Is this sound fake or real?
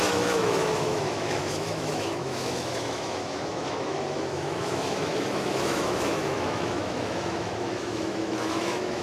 fake